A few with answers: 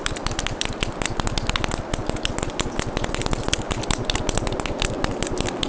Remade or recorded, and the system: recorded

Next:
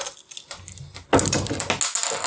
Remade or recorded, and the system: recorded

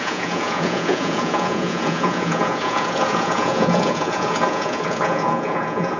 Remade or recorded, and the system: remade, vocoder, Vocos